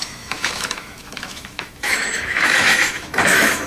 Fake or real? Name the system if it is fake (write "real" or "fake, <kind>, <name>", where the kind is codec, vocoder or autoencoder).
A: fake, autoencoder, DAC-VAE